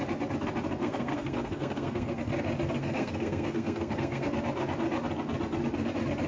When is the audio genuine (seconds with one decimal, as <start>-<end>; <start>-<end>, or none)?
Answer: 0.0-0.8; 2.2-2.8; 4.3-6.3